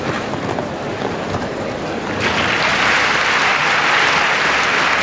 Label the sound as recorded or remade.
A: recorded